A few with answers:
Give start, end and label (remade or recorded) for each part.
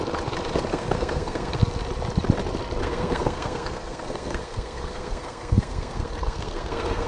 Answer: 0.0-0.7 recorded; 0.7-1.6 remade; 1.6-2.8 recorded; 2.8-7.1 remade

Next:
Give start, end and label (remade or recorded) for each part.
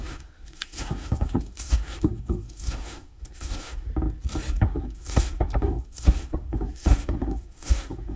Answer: 0.0-3.9 remade; 3.9-4.5 recorded; 4.5-8.2 remade